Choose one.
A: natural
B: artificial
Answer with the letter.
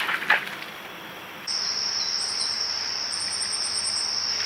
A